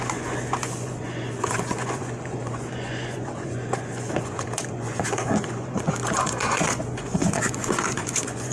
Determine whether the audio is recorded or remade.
remade